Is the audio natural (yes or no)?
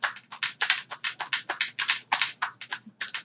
yes